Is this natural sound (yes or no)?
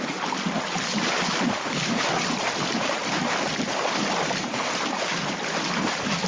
yes